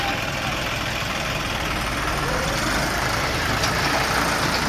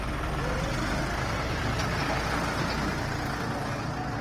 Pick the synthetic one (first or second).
first